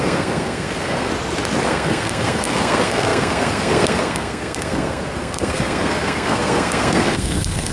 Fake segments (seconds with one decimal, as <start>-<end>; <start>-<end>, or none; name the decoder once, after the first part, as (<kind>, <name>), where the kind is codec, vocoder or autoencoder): 0.0-1.1 (codec, SNAC); 1.6-7.7